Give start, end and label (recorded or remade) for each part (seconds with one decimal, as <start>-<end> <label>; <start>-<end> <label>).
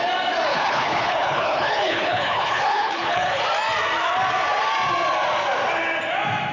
0.0-0.5 recorded; 0.5-3.4 remade; 3.4-6.5 recorded